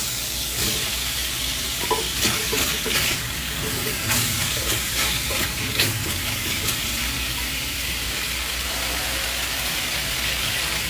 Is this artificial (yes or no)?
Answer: yes